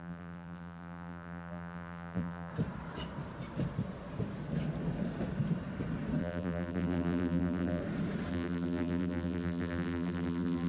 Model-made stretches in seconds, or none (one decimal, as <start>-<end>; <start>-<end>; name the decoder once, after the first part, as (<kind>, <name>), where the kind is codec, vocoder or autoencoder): 0.0-2.5 (vocoder, BigVGAN v2); 6.2-7.8; 8.3-10.7